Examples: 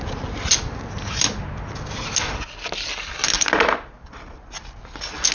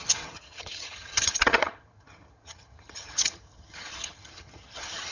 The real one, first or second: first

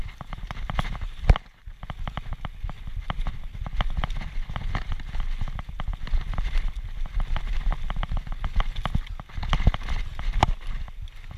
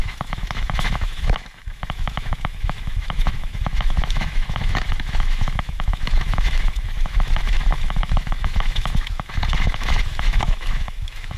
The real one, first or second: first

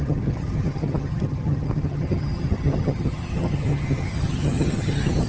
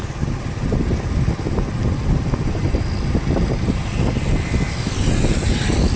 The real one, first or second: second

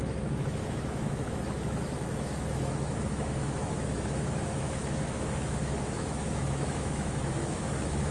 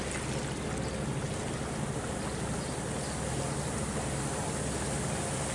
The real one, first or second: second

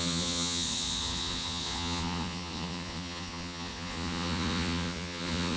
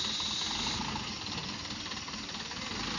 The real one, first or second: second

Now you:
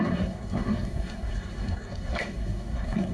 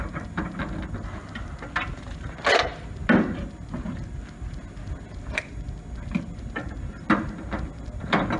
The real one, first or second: second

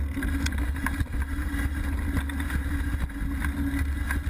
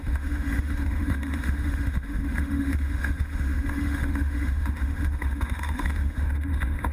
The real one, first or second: first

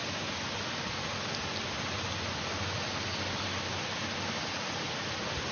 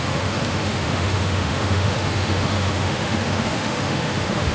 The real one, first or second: first